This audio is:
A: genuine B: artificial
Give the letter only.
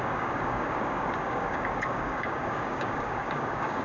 B